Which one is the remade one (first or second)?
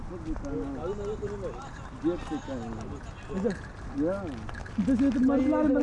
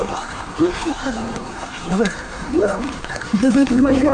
second